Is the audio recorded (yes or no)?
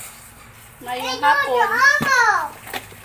yes